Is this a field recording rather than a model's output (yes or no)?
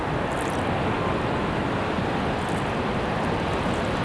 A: yes